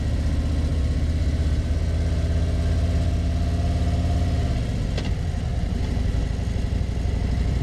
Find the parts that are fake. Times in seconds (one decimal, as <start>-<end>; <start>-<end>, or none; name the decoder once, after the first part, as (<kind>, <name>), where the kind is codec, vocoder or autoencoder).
0.7-1.8 (vocoder, BigVGAN v2); 5.5-6.3